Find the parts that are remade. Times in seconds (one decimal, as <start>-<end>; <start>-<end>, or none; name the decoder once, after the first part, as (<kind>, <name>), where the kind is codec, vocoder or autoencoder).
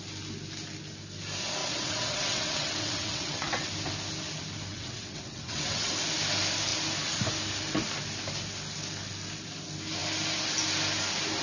1.6-3.7 (vocoder, WaveNeXt); 4.7-5.9